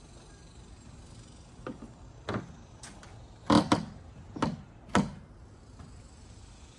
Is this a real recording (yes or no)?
yes